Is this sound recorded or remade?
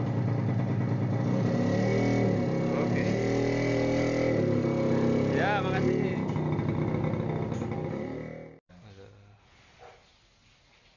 recorded